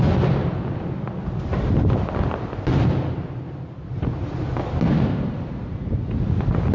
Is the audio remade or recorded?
recorded